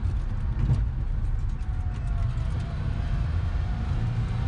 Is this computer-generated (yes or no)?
no